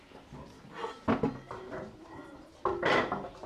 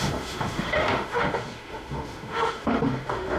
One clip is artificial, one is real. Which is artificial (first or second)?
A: second